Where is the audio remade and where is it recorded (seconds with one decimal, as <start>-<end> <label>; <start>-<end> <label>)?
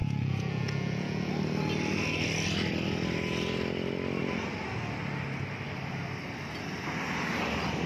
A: 0.0-1.3 remade; 1.3-7.9 recorded